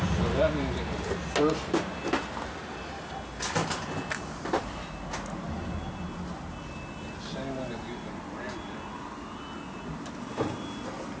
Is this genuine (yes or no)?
yes